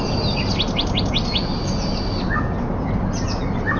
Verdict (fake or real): real